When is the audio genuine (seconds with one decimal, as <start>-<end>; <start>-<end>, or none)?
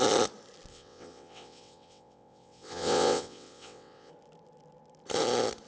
0.0-0.7; 4.1-5.7